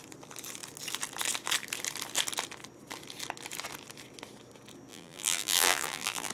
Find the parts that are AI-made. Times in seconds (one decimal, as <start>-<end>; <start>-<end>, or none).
4.9-6.3